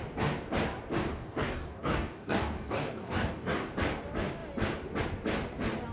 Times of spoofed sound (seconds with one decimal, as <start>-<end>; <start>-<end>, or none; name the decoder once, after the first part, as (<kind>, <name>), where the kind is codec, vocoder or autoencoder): 1.1-3.7 (codec, DAC)